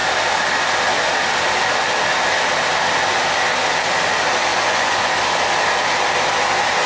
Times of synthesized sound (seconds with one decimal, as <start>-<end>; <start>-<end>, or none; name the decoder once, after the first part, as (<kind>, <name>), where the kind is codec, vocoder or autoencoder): 4.5-5.1 (vocoder, Vocos)